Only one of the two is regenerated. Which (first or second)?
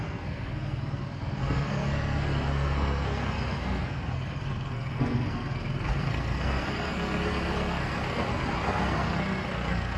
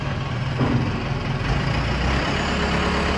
first